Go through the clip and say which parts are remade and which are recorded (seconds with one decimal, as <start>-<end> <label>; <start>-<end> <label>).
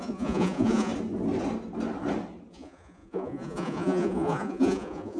0.0-0.9 remade; 0.9-2.5 recorded; 2.5-5.2 remade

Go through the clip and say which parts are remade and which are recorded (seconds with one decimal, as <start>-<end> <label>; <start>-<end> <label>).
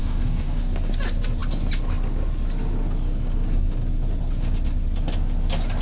0.0-0.6 remade; 0.6-5.8 recorded